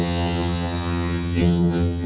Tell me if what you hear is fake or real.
fake